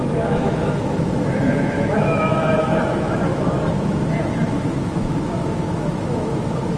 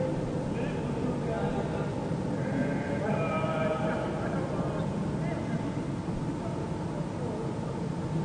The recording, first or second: second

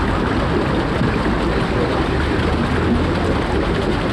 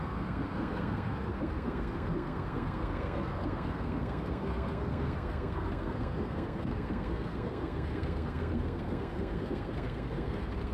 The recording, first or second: first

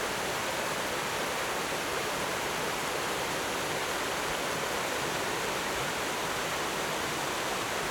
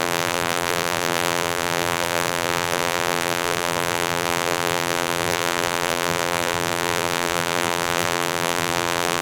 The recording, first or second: first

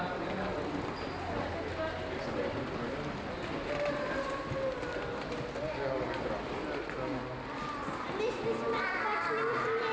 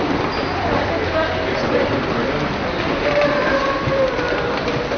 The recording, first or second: first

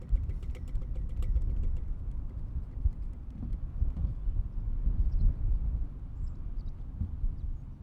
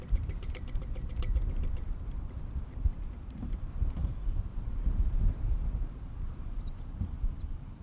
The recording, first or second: first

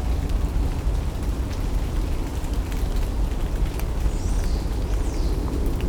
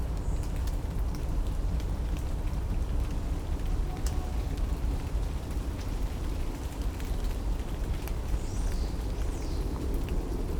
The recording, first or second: first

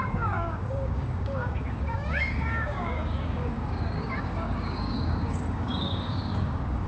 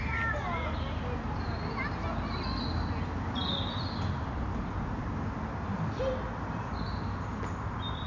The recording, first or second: second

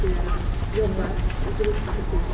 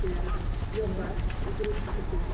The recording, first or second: first